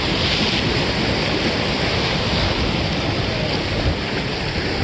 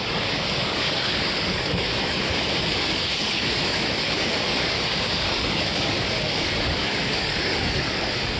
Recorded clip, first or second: first